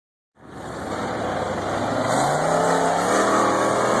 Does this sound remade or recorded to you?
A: recorded